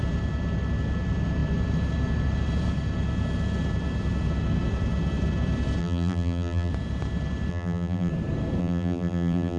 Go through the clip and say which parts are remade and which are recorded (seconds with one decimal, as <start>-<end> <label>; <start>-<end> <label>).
0.0-5.8 recorded; 5.8-6.7 remade; 6.7-7.5 recorded; 7.5-8.1 remade; 8.1-8.6 recorded; 8.6-9.6 remade